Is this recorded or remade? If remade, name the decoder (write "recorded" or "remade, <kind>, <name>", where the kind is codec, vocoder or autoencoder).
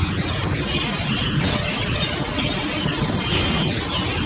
recorded